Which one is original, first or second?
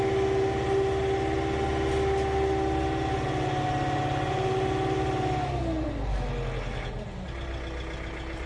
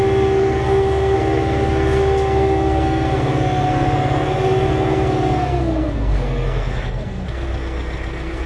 first